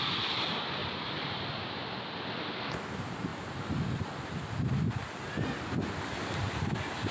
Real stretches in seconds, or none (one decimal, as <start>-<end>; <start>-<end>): 0.0-0.8; 1.7-3.3; 4.0-7.1